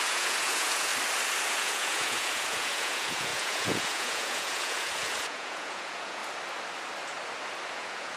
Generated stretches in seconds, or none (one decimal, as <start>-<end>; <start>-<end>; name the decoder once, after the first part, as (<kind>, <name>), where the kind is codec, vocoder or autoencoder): 0.0-0.9 (vocoder, Vocos); 1.5-6.2; 7.7-8.2